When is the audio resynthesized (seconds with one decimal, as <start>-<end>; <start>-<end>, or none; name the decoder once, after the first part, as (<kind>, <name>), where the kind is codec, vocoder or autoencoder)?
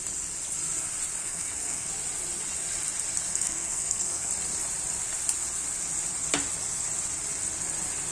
1.2-1.9 (codec, SNAC); 3.3-4.3